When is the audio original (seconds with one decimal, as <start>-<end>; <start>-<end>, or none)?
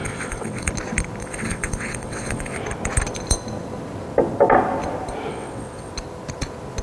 0.7-1.2; 2.6-5.3; 5.9-6.8